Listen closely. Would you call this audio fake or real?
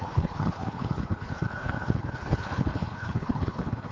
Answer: fake